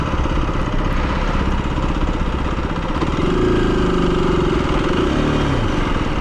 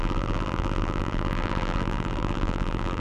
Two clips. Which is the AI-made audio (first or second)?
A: second